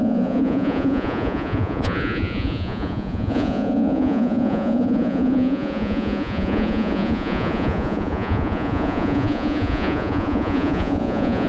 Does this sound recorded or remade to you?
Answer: remade